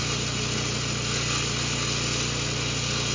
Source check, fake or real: real